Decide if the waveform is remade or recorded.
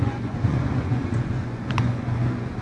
remade